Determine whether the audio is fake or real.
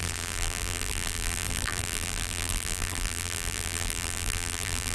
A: fake